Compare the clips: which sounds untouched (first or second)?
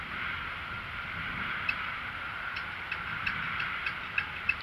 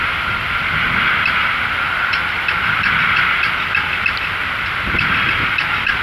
second